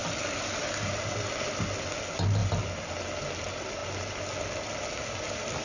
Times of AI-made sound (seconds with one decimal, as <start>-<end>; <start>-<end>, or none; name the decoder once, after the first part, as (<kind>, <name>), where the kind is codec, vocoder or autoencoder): none